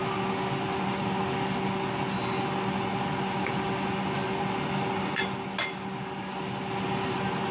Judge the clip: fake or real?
real